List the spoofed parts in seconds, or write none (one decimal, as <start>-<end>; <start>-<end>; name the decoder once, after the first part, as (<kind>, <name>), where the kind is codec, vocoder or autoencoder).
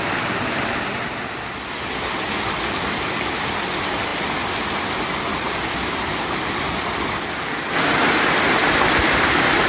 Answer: none